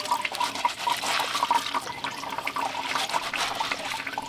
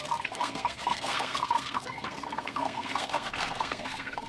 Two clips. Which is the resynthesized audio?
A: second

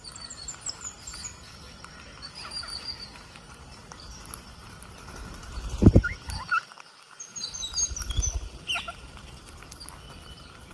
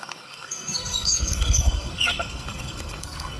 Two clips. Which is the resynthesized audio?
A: second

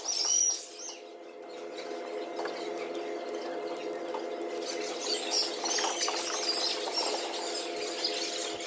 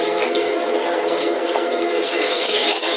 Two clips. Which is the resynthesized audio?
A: second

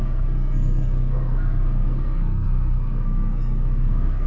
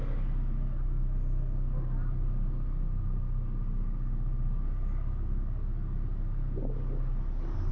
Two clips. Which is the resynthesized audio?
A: first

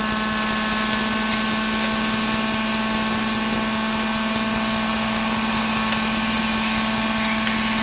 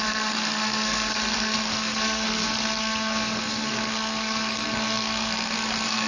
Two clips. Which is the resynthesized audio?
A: second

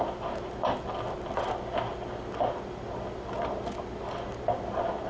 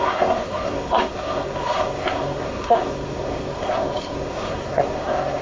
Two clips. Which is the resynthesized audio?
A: second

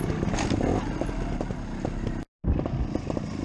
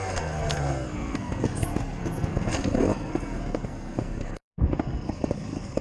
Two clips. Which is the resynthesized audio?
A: second